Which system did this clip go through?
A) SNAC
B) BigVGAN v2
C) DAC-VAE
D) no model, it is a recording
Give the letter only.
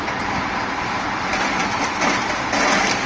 D